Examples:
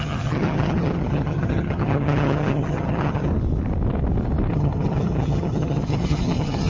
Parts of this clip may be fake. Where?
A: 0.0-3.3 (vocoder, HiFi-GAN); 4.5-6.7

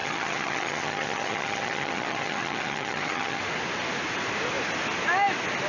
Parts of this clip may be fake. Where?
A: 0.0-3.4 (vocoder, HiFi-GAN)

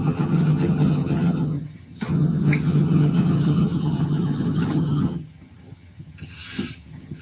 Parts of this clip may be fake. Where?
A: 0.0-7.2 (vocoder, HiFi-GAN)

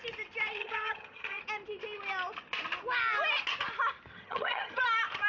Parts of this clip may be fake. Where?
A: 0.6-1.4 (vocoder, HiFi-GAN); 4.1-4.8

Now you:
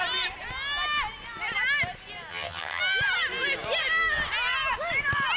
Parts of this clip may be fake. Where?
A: 2.3-2.8 (vocoder, HiFi-GAN)